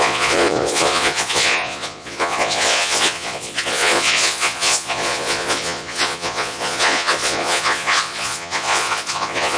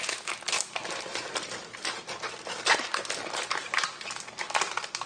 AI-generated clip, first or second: first